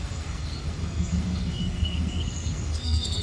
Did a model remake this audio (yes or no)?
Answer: yes